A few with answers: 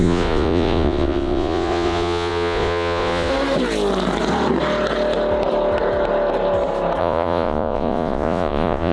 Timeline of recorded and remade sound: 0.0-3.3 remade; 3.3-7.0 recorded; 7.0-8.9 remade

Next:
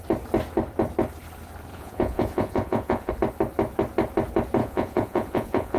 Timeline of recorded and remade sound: 0.0-1.7 recorded; 1.7-3.1 remade; 3.1-4.6 recorded; 4.6-5.8 remade

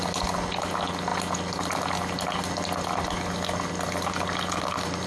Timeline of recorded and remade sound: 0.0-5.1 recorded

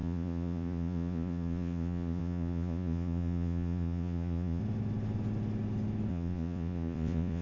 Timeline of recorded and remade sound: 0.0-4.6 remade; 4.6-6.1 recorded; 6.1-7.4 remade

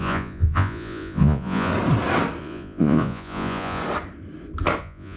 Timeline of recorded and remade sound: 0.0-1.7 remade; 1.7-2.4 recorded; 2.4-3.8 remade; 3.8-4.8 recorded; 4.8-5.2 remade

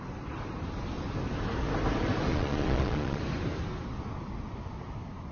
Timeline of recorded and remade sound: 0.0-2.3 recorded; 2.3-3.2 remade; 3.2-5.3 recorded

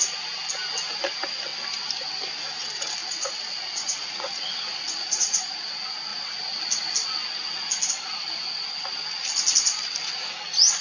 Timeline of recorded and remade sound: 0.0-3.0 recorded; 3.0-5.5 remade; 5.5-10.8 recorded

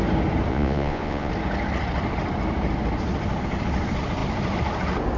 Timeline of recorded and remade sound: 0.0-0.5 recorded; 0.5-1.3 remade; 1.3-5.2 recorded